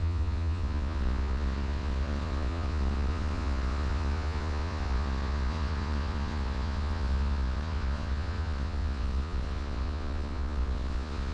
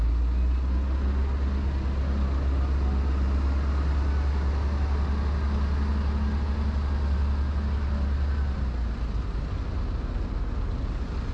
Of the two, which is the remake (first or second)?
first